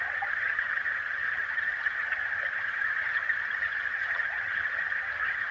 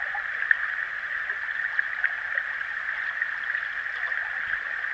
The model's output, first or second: first